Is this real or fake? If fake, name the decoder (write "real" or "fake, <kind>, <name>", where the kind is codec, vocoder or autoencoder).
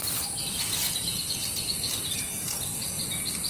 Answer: real